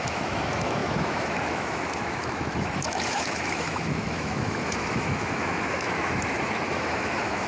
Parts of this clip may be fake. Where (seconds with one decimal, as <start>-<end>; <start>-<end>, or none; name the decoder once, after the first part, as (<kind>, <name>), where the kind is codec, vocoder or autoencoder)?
0.0-7.5 (autoencoder, DAC-VAE)